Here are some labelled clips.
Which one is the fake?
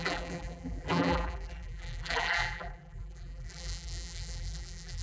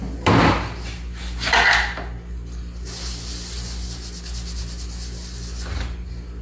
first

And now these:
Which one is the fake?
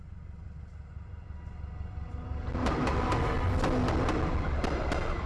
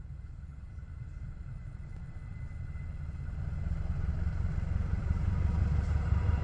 second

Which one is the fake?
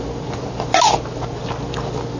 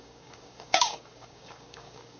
second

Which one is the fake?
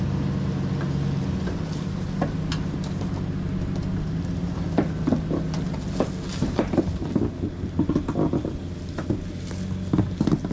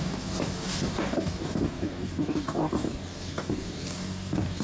second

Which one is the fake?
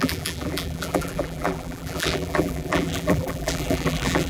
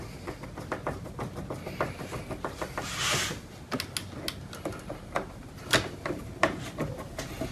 first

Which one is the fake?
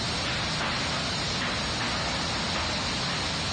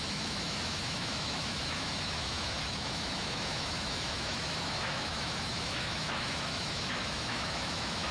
second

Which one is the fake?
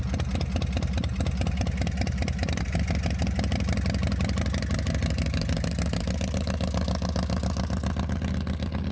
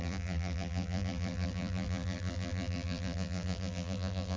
second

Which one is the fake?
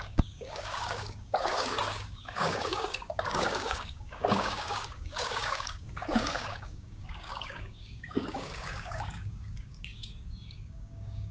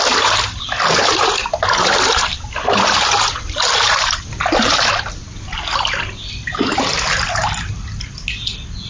first